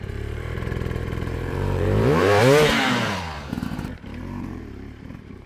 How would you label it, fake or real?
fake